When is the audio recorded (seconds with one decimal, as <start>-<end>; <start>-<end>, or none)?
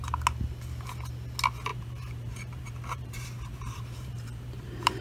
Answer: 0.0-1.7